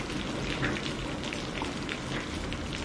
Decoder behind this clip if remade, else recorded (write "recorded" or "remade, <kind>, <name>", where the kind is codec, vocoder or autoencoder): recorded